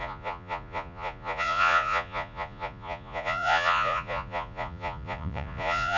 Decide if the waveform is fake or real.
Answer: fake